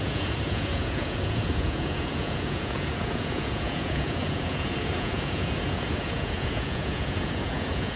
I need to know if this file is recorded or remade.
remade